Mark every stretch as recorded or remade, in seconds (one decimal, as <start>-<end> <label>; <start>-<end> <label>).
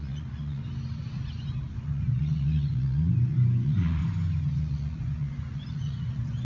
0.0-0.6 remade; 0.6-1.7 recorded; 1.7-4.0 remade; 4.0-4.6 recorded; 4.6-6.4 remade